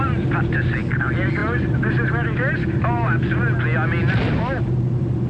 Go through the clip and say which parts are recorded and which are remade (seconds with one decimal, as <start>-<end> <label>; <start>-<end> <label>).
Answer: 0.0-5.3 recorded